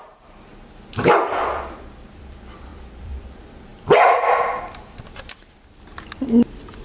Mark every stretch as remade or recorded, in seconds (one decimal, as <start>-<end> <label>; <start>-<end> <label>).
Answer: 0.0-0.5 remade; 0.5-1.4 recorded; 1.4-3.7 remade; 3.7-6.8 recorded